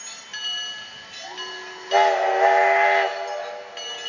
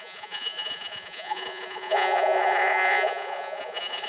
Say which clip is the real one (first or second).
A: first